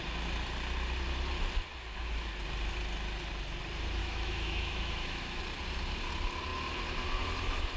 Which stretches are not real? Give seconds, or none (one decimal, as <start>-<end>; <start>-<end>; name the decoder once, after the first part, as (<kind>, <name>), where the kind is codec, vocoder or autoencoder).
4.0-5.4 (autoencoder, DAC-VAE)